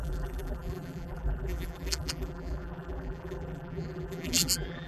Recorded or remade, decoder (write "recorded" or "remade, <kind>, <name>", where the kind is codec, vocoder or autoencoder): remade, vocoder, BigVGAN v2